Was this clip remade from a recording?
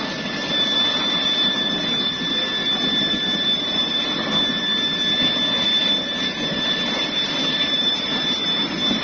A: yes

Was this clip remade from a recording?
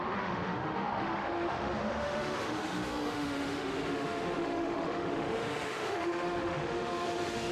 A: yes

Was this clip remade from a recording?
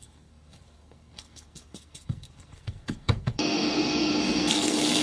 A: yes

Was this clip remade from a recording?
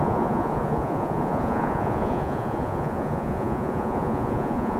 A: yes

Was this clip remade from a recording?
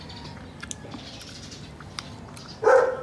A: no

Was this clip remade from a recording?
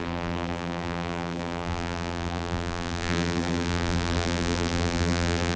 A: yes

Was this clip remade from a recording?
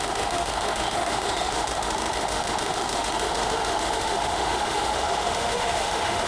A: yes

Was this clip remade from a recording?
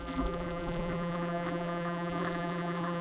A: yes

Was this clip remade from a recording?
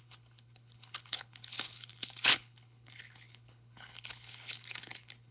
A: yes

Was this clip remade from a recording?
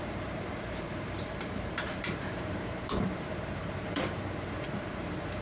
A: yes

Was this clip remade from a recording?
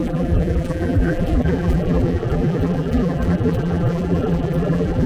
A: yes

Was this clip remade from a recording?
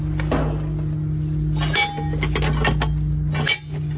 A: no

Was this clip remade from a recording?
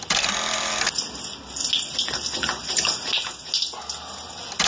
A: no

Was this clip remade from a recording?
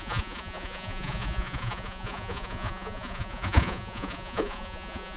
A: yes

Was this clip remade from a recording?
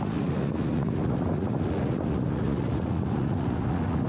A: yes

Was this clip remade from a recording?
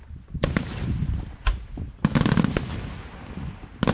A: no